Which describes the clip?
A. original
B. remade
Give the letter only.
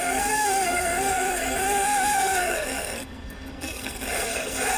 B